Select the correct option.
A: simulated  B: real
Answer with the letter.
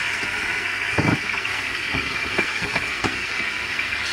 A